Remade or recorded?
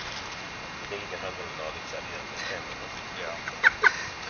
recorded